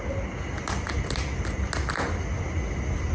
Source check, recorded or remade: recorded